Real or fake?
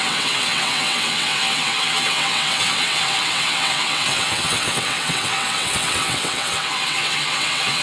fake